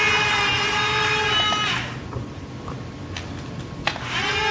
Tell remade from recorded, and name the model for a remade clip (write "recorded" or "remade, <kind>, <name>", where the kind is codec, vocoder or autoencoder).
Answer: recorded